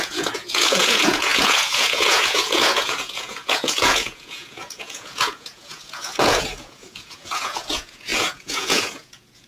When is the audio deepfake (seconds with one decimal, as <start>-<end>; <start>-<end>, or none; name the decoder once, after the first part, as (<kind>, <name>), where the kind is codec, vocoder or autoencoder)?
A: 0.0-9.5 (vocoder, Vocos)